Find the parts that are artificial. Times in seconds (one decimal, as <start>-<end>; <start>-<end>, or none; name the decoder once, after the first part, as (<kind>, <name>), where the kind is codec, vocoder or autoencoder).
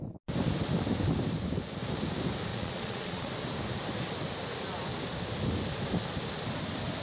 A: 2.5-3.3 (vocoder, Vocos)